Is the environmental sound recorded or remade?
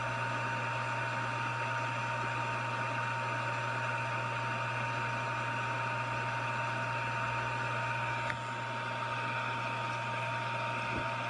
recorded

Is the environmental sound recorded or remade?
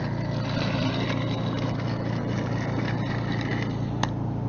recorded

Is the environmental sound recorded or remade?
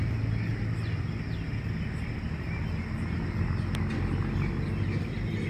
recorded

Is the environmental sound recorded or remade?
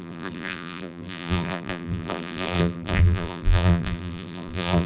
remade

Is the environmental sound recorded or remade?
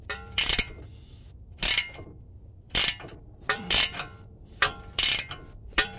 remade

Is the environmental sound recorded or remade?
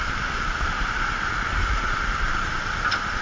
remade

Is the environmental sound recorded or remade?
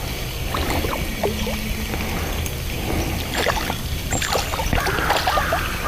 recorded